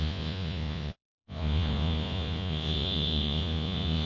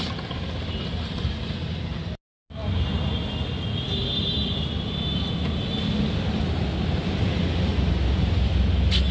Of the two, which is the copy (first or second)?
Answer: first